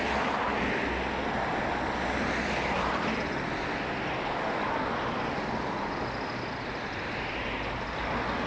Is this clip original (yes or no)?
yes